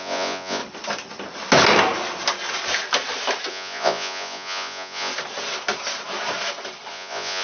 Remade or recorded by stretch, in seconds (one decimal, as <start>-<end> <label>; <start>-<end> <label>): 0.0-0.6 remade; 0.6-3.5 recorded; 3.5-5.1 remade; 5.1-6.9 recorded; 6.9-7.4 remade